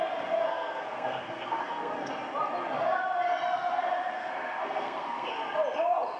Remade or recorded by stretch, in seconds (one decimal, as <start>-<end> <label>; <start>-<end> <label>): 0.0-0.5 recorded; 0.5-2.1 remade; 2.1-4.2 recorded; 4.2-5.3 remade; 5.3-6.2 recorded